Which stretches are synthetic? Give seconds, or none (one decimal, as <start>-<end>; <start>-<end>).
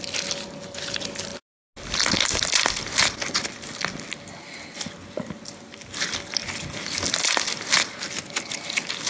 none